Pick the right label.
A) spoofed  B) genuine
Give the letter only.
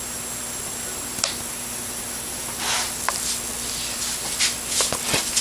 B